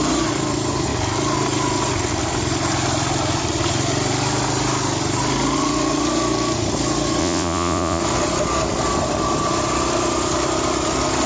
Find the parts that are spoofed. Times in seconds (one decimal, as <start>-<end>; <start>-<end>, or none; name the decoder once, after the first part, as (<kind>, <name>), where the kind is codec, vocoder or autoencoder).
7.2-8.0 (vocoder, Vocos)